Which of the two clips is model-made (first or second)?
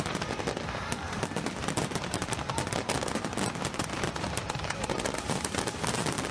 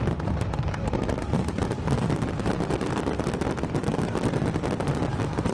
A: first